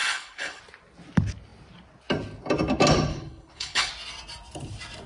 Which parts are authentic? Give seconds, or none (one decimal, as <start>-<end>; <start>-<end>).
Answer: 0.6-3.1; 3.9-5.1